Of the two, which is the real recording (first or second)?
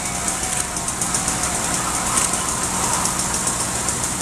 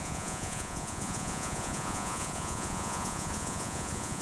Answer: first